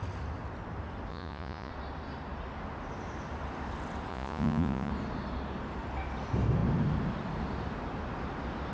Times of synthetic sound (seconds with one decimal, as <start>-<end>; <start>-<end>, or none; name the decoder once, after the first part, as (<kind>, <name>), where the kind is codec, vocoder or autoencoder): 1.1-1.7 (vocoder, Vocos); 4.1-4.9